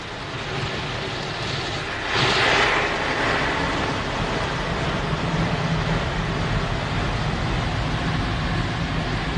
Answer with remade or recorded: recorded